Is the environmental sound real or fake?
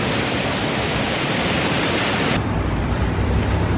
fake